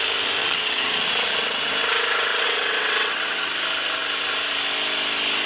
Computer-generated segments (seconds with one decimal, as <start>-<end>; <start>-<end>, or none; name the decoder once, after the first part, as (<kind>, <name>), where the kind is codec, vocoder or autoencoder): 0.4-1.7 (vocoder, WaveNeXt); 2.3-3.5